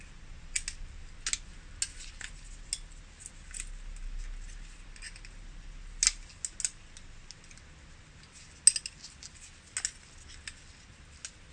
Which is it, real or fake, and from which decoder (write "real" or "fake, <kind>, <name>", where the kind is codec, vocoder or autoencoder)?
real